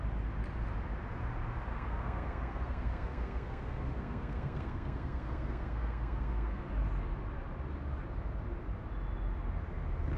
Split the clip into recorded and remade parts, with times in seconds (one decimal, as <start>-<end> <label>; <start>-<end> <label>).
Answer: 0.0-1.7 recorded; 1.7-6.6 remade; 6.6-10.2 recorded